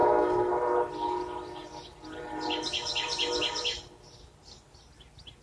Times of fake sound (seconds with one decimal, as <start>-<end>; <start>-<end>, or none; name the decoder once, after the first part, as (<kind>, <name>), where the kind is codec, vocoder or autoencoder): 0.0-0.5 (codec, SNAC)